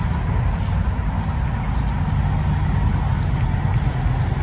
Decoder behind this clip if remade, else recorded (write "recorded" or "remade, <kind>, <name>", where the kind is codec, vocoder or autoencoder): recorded